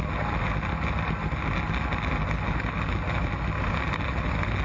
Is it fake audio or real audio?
real